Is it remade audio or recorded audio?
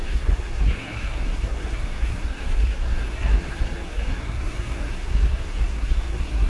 remade